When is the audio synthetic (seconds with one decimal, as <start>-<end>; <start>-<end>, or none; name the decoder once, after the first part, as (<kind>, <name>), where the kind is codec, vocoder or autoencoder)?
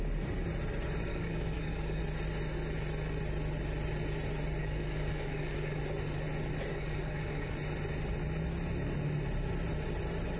1.1-2.0 (codec, DAC); 4.6-5.8; 6.7-7.5